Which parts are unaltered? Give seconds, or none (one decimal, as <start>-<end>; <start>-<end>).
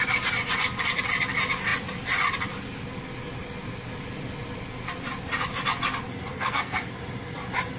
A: 0.0-6.3; 6.9-7.8